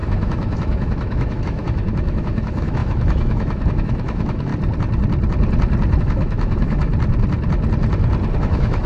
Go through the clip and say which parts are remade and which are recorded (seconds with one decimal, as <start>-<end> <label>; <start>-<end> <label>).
0.0-4.5 remade; 4.5-6.0 recorded; 6.0-6.9 remade; 6.9-8.4 recorded; 8.4-8.9 remade